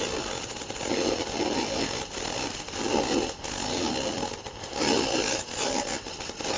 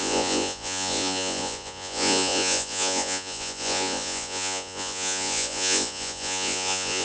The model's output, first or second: second